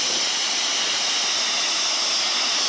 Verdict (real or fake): real